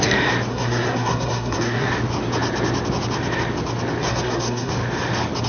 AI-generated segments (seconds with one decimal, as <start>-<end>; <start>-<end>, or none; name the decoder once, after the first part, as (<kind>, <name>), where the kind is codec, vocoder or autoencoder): 0.5-1.9 (codec, SNAC); 4.0-4.7